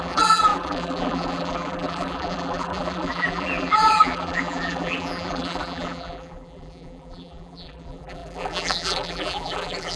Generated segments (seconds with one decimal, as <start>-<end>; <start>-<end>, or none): 0.0-10.0